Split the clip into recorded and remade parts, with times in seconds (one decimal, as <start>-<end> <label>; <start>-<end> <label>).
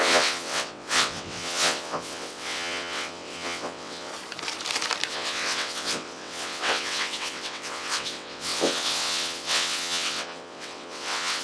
0.0-4.1 remade; 4.1-5.1 recorded; 5.1-11.4 remade